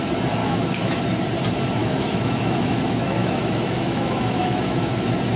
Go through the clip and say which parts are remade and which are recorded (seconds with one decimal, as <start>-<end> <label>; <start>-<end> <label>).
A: 0.0-0.4 recorded; 0.4-1.0 remade; 1.0-1.8 recorded; 1.8-4.9 remade; 4.9-5.4 recorded